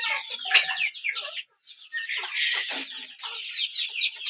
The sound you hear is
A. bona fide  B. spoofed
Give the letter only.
A